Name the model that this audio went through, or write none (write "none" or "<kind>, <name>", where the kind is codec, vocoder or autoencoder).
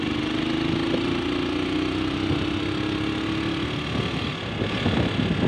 none